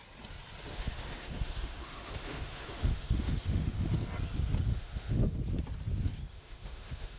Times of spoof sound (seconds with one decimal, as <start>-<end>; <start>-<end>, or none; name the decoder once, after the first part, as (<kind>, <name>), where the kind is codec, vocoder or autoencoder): 0.7-3.9 (autoencoder, DAC-VAE); 4.7-5.4; 6.3-7.2